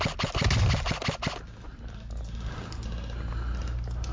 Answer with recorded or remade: recorded